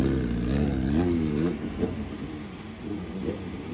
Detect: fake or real real